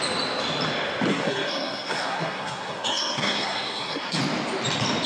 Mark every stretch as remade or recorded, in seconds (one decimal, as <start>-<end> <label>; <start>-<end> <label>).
0.0-1.1 recorded; 1.1-4.2 remade; 4.2-5.1 recorded